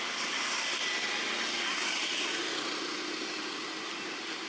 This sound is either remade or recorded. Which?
recorded